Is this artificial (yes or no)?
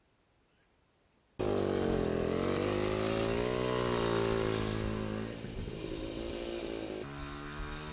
no